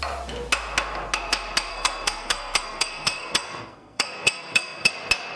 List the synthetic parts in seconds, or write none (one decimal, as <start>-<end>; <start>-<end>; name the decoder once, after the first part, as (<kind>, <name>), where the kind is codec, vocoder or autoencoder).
1.7-4.9 (codec, SNAC)